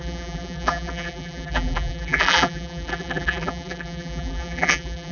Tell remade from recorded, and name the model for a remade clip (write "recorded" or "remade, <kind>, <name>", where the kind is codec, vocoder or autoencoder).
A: remade, vocoder, BigVGAN v2